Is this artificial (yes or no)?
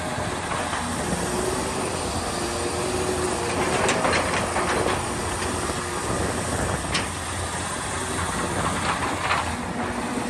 no